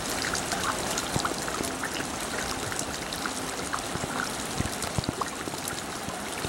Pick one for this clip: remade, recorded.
recorded